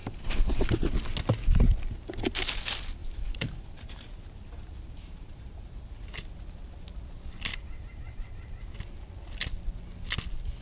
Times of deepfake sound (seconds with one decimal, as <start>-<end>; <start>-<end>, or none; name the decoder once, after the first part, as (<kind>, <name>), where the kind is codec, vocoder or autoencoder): 0.0-0.9 (vocoder, BigVGAN v2); 3.0-6.3; 7.5-8.6